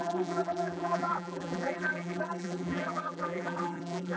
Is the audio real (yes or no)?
no